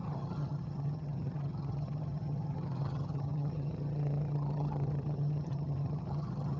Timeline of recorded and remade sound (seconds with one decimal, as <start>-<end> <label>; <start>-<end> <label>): 0.0-6.6 remade